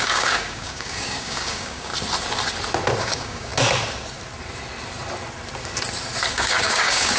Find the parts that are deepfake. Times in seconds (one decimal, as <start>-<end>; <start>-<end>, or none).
0.0-1.9; 3.0-3.5; 6.3-7.2